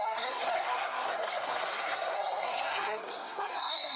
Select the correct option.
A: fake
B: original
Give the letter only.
A